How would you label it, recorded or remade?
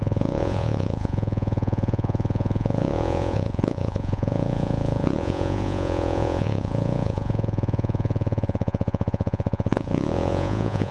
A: remade